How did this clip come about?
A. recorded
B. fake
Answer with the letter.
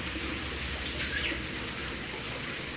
A